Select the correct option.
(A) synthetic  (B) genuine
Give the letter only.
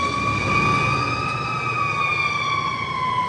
B